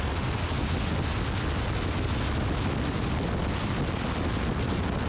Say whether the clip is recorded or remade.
recorded